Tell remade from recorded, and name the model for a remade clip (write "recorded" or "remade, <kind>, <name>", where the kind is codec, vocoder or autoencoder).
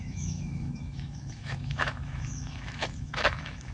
remade, autoencoder, DAC-VAE